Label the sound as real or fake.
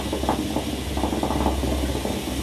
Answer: real